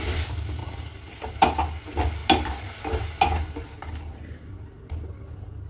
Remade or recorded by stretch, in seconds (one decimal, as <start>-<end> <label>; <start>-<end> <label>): 0.0-0.6 remade; 0.6-1.8 recorded; 1.8-2.2 remade; 2.2-5.7 recorded